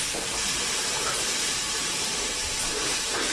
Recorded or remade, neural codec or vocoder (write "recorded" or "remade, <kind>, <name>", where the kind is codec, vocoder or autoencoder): remade, vocoder, BigVGAN v2